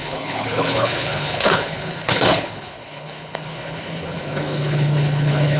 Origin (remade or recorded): remade